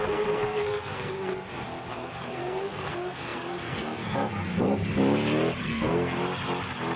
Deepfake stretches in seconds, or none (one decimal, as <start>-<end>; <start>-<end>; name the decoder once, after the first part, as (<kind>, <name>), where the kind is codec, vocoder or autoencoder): 0.0-1.3 (codec, SNAC); 1.9-4.8; 5.6-6.2